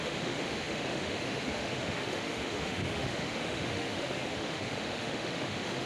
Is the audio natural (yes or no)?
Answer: no